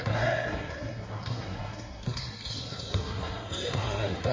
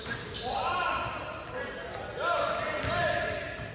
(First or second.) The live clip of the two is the second